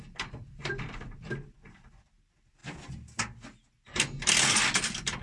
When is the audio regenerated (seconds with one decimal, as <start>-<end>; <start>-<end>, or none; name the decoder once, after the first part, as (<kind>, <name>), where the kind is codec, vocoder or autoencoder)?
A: none